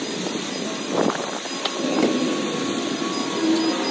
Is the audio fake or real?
real